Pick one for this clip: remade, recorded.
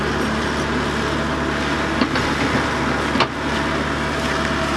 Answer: recorded